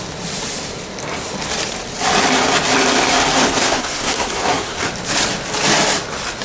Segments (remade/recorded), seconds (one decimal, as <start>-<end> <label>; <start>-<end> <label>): 0.0-3.6 recorded; 3.6-4.9 remade; 4.9-6.4 recorded